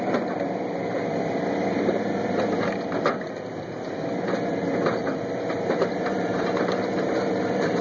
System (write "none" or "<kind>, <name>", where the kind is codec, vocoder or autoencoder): vocoder, BigVGAN v2